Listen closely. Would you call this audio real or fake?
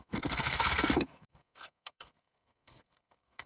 fake